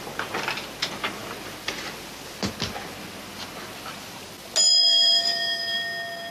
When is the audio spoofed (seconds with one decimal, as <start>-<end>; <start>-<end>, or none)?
4.8-5.6